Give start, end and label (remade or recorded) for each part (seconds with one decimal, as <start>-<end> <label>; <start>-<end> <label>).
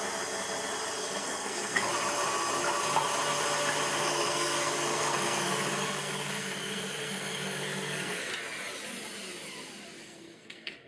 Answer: 0.0-1.0 recorded; 1.0-1.9 remade; 1.9-4.0 recorded; 4.0-8.3 remade; 8.3-10.0 recorded; 10.0-10.9 remade